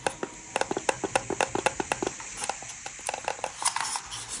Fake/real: real